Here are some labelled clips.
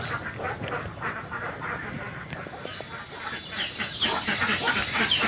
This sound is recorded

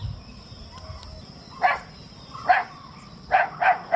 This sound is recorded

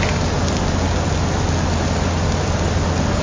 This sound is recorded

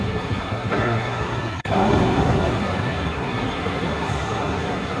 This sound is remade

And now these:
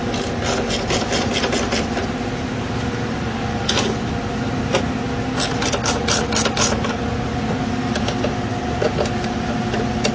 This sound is recorded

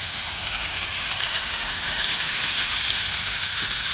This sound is remade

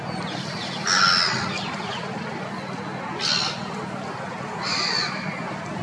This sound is recorded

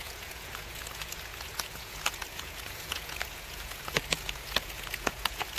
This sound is remade